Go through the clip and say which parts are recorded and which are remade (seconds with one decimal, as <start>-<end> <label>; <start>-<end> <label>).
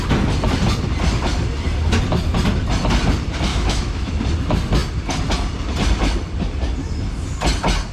0.0-3.5 recorded; 3.5-4.1 remade; 4.1-7.9 recorded